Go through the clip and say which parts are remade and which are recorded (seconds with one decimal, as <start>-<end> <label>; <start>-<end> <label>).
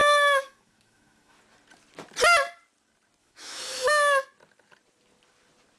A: 0.0-1.4 remade; 1.4-3.2 recorded; 3.2-3.9 remade; 3.9-5.8 recorded